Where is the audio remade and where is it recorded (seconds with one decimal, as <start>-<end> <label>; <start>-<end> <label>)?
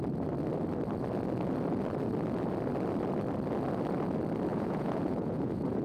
0.0-4.5 recorded; 4.5-5.8 remade